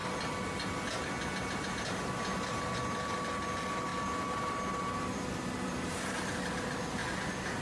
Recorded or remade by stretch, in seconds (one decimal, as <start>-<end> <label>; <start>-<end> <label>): 0.0-7.6 recorded